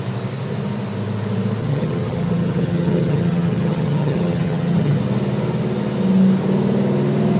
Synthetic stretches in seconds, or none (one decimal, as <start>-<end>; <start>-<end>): 1.6-5.0